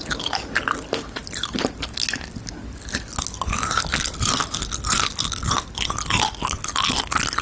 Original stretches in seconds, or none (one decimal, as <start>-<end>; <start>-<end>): 0.0-7.4